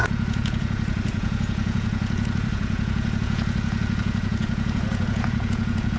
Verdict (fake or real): fake